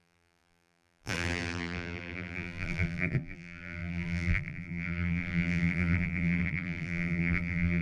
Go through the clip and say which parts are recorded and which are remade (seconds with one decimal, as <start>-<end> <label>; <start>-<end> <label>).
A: 0.0-7.8 remade